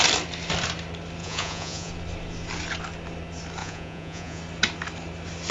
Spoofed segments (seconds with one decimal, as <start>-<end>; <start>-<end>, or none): 1.2-1.9; 3.6-4.4